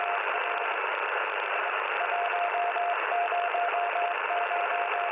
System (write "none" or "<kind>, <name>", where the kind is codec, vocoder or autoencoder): none